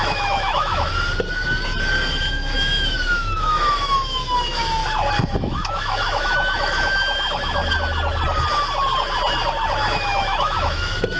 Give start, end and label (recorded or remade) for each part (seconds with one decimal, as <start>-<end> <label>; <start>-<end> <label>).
0.0-0.9 remade; 0.9-2.3 recorded; 2.3-4.8 remade; 4.8-5.4 recorded; 5.4-7.6 remade; 7.6-9.8 recorded; 9.8-11.2 remade